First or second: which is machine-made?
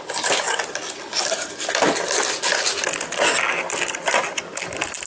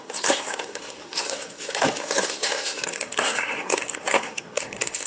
second